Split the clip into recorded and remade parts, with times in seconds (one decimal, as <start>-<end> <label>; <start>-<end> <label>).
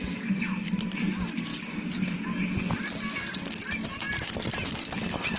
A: 0.0-5.4 recorded